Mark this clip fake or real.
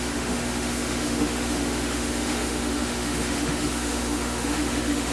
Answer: fake